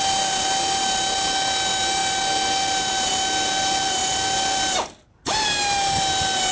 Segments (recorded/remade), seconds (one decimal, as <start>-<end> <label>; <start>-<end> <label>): 0.0-6.5 recorded